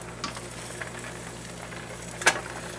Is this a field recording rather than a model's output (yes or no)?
yes